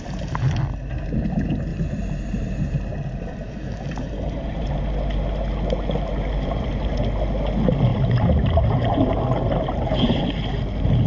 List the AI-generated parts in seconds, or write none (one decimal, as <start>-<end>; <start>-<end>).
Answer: 1.7-4.7; 6.1-6.7; 7.9-10.2